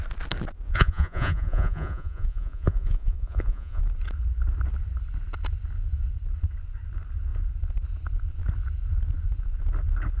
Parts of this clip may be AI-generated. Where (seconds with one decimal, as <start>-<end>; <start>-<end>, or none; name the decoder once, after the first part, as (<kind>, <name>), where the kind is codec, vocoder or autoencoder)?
0.7-3.8 (vocoder, Vocos)